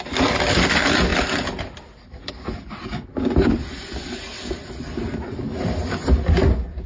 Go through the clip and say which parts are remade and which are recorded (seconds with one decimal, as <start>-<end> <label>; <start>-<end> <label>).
0.0-6.9 recorded